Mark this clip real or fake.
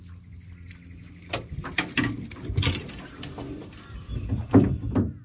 real